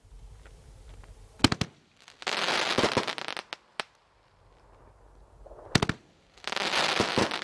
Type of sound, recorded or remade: recorded